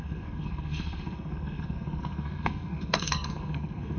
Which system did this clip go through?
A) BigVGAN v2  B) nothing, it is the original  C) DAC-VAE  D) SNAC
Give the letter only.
D